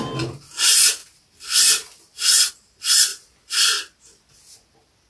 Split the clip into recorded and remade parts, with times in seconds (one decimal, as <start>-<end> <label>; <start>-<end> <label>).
0.0-5.1 recorded